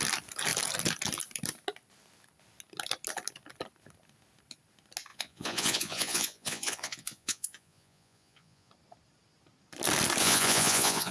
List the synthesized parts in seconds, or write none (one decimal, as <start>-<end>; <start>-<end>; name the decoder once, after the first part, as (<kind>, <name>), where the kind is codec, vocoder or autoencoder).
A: 5.1-8.7 (vocoder, Vocos); 10.2-11.1